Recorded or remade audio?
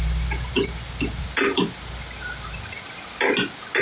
recorded